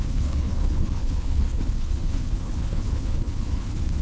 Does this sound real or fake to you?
fake